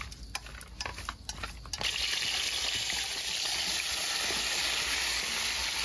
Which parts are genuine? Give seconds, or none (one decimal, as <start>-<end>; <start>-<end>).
0.0-5.8